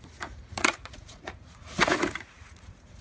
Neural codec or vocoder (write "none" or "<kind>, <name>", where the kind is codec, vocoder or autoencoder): vocoder, Vocos